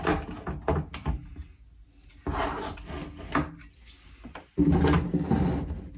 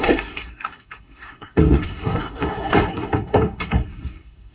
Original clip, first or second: first